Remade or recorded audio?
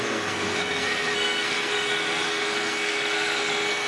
remade